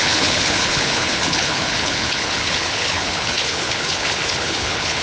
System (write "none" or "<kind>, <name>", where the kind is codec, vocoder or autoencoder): codec, HILCodec